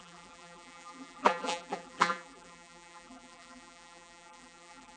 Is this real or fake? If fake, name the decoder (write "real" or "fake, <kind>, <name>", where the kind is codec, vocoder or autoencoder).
fake, vocoder, BigVGAN v2